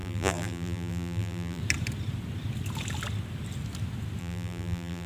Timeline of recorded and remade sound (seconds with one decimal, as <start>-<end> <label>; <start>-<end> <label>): 0.0-1.6 remade; 1.6-4.2 recorded; 4.2-5.1 remade